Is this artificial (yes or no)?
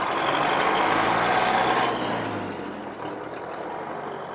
no